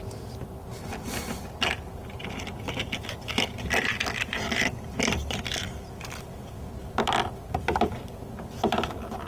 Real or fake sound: real